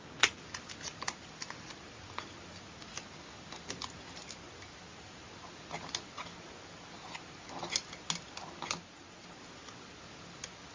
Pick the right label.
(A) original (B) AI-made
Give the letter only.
A